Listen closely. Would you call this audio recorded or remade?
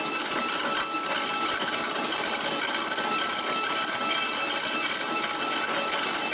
recorded